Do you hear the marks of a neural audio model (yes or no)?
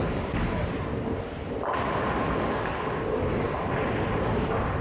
no